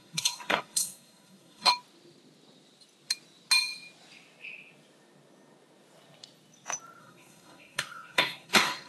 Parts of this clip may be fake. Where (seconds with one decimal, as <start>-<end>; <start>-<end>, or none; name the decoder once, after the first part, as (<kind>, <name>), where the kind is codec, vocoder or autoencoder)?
0.0-1.7 (codec, SNAC); 7.0-8.9